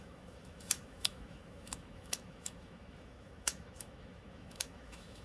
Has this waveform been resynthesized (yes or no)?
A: yes